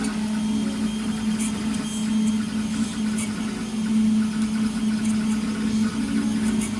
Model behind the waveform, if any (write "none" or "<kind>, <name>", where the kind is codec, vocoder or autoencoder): none